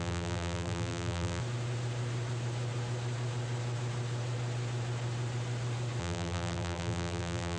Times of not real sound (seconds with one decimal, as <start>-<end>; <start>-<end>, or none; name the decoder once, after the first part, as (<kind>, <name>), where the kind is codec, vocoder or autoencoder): 0.0-1.4 (vocoder, BigVGAN v2); 6.0-7.6